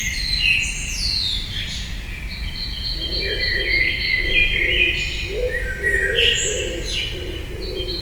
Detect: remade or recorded recorded